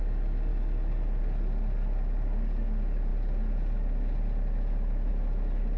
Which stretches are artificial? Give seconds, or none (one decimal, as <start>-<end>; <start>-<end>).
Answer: none